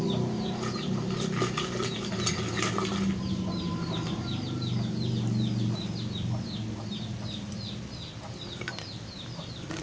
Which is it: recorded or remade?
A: recorded